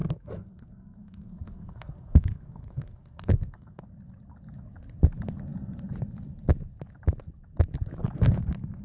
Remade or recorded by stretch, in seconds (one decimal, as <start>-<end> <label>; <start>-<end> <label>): 0.0-3.8 remade; 3.8-8.8 recorded